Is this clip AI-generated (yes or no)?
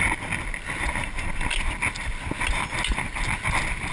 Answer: no